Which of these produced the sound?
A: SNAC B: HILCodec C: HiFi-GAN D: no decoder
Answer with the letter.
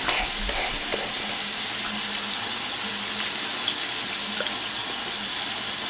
D